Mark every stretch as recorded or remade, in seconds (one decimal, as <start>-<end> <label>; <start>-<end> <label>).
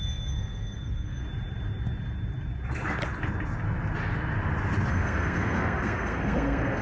0.0-1.2 remade; 1.2-4.9 recorded; 4.9-6.8 remade